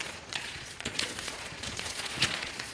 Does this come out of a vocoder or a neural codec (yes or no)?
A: yes